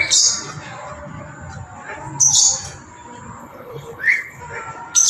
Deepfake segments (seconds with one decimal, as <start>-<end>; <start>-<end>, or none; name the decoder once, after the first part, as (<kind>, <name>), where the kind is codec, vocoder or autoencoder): 3.4-4.4 (codec, HILCodec)